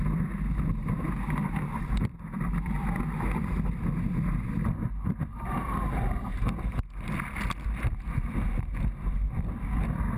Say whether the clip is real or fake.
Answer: real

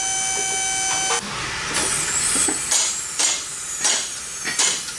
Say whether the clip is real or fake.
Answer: real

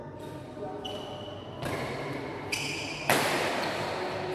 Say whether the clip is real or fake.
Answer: real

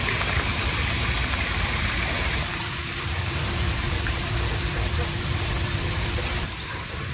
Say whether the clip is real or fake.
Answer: fake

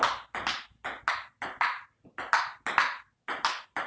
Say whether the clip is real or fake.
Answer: real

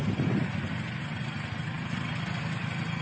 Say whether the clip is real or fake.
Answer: real